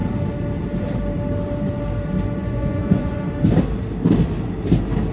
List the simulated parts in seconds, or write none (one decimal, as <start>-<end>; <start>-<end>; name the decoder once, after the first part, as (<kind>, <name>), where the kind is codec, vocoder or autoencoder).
2.4-3.3 (vocoder, Vocos)